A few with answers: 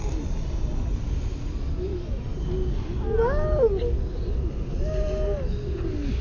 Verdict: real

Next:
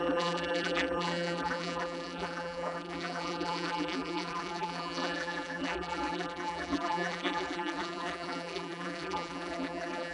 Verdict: fake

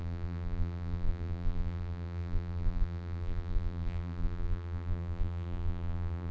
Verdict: fake